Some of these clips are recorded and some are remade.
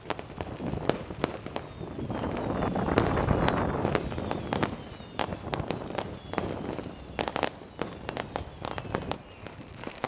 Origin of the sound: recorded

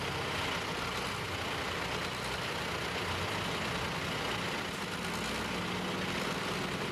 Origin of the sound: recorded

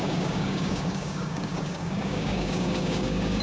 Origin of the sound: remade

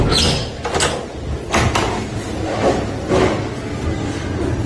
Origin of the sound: recorded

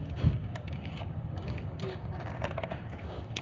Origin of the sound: remade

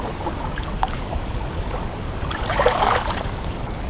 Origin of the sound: remade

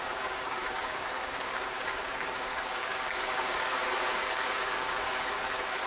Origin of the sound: remade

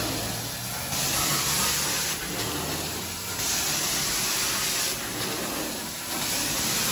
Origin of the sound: recorded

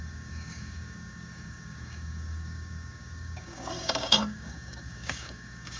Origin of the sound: remade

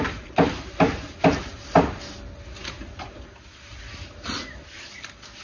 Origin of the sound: recorded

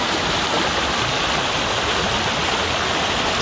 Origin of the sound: recorded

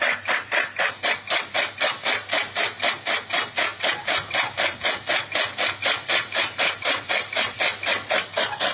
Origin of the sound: recorded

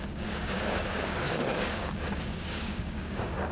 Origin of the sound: remade